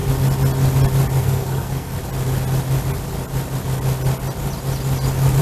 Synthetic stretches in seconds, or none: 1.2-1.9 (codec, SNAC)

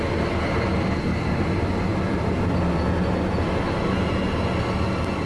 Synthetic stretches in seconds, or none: none

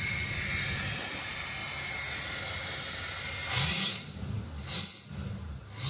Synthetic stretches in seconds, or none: none

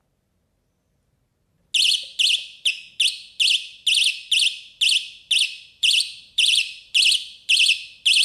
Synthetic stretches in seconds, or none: 5.8-6.9 (vocoder, BigVGAN v2)